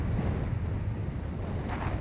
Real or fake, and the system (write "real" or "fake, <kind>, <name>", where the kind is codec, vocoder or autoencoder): real